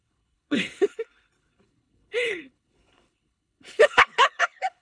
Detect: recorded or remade remade